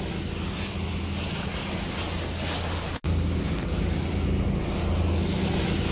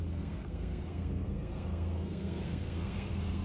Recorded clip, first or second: first